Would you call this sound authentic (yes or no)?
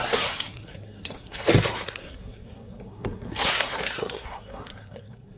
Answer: no